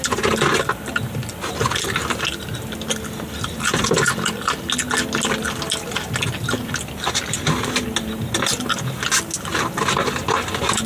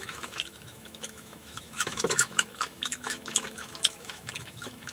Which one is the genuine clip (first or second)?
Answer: first